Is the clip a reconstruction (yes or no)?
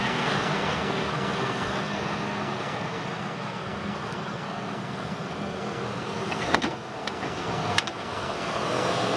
yes